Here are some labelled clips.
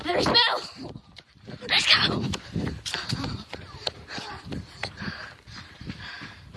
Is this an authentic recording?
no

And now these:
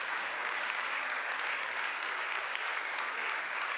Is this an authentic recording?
no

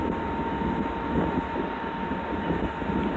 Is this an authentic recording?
yes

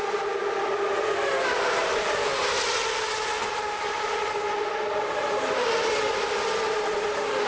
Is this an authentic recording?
yes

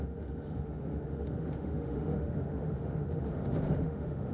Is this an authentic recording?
no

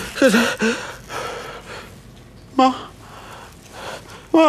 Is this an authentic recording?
yes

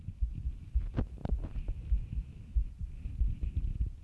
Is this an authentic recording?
yes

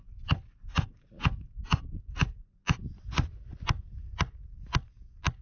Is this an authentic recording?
yes